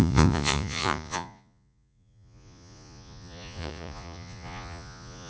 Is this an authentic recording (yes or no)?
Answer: no